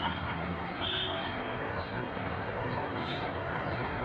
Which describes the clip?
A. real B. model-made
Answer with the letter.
B